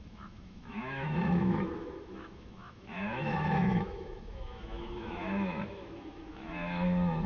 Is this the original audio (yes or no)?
no